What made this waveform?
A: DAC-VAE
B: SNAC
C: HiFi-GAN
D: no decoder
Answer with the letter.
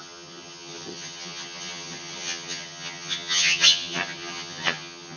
C